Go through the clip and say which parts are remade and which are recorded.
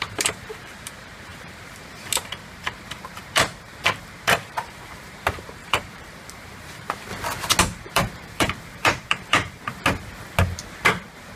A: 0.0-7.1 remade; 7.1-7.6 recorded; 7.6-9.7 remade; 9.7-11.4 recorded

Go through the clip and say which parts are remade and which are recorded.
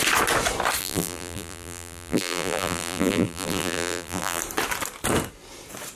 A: 0.0-0.8 recorded; 0.8-4.4 remade; 4.4-6.0 recorded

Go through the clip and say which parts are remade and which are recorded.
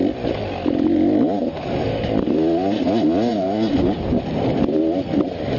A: 0.0-3.3 recorded; 3.3-4.5 remade; 4.5-5.6 recorded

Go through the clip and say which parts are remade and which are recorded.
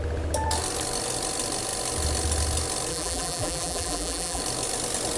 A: 0.0-2.9 recorded; 2.9-4.4 remade; 4.4-5.2 recorded